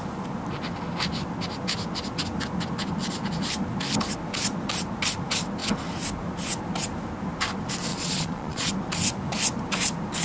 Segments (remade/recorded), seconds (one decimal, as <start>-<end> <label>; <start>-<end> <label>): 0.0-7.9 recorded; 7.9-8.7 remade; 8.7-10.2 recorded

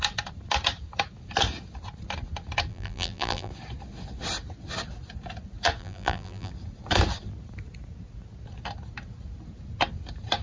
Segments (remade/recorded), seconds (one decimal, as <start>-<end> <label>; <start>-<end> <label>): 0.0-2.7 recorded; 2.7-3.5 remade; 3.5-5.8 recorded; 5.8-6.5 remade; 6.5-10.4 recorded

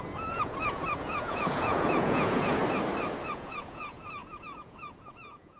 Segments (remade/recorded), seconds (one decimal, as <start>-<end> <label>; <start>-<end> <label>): 0.0-2.6 remade; 2.6-3.3 recorded; 3.3-5.6 remade

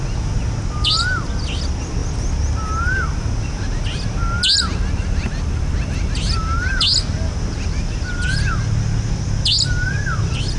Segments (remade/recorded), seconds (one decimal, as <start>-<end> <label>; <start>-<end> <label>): 0.0-10.6 recorded